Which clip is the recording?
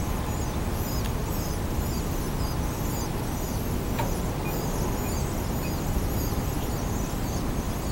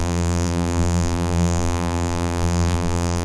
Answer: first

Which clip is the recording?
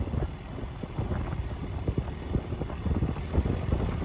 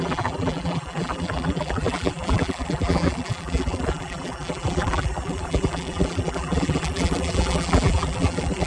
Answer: first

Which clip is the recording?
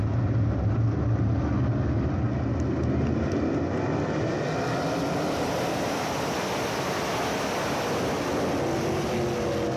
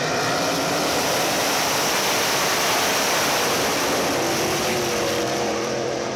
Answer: first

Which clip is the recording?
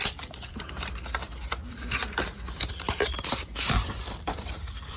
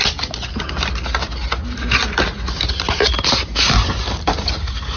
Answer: second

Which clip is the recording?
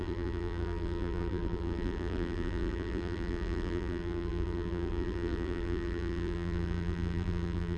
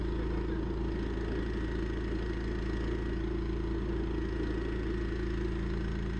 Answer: second